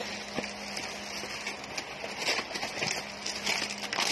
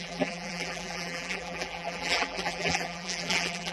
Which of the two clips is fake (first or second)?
second